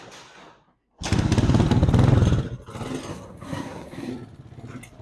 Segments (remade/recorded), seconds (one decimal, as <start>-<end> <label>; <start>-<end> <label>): 0.0-3.1 recorded; 3.1-4.1 remade; 4.1-5.0 recorded